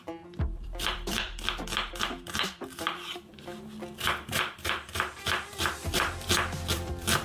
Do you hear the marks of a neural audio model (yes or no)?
yes